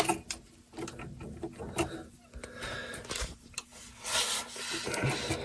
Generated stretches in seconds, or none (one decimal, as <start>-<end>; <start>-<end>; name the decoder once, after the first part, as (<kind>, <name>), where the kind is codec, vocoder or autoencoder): none

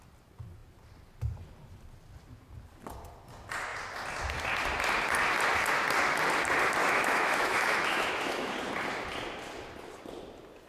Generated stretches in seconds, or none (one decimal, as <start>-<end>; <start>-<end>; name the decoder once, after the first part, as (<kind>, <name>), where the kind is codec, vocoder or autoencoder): 6.8-8.5 (autoencoder, DAC-VAE)

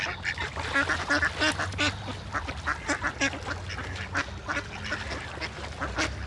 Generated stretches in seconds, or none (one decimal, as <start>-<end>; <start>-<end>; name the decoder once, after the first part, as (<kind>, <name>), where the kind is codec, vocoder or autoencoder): none

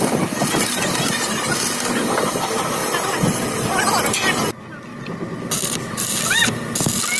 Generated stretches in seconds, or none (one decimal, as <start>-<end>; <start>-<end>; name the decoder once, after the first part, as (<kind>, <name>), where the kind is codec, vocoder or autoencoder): none

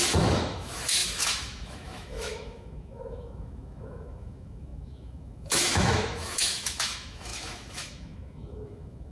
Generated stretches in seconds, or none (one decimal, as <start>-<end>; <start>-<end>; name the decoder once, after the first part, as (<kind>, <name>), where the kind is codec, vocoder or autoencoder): 0.0-9.1 (autoencoder, DAC-VAE)

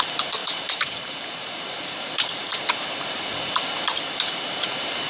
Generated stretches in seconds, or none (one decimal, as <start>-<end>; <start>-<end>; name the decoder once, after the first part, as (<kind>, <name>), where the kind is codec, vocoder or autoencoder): 0.0-5.1 (vocoder, BigVGAN v2)

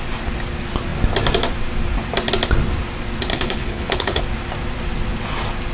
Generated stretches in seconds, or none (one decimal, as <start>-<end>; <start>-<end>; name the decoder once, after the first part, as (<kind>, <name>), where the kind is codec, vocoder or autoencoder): 3.3-4.2 (codec, HILCodec)

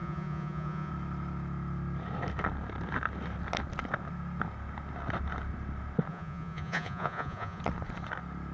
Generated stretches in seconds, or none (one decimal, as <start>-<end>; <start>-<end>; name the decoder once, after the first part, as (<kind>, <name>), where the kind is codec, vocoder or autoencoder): 0.0-0.9 (vocoder, Vocos); 6.1-7.6